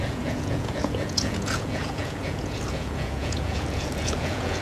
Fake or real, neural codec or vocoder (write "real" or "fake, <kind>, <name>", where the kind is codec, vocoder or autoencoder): fake, vocoder, Vocos